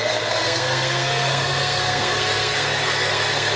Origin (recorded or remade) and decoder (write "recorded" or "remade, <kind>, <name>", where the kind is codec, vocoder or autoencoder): remade, codec, SNAC